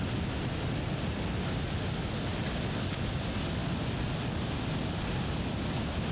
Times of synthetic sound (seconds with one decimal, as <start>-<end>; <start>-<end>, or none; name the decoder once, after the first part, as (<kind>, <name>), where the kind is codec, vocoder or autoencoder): none